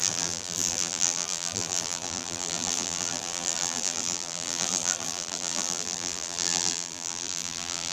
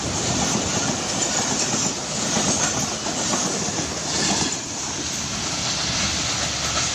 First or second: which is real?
second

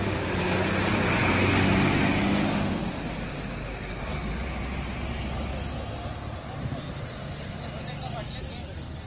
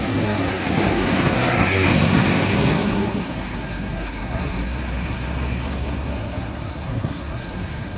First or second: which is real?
first